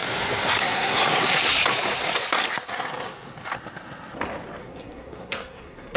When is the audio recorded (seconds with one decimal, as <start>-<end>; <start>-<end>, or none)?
0.0-0.6; 1.0-4.6